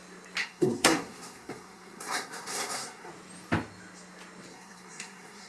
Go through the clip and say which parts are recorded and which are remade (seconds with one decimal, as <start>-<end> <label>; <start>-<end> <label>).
0.0-0.4 recorded; 0.4-3.1 remade; 3.1-4.5 recorded; 4.5-5.5 remade